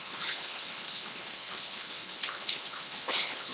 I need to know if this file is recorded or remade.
remade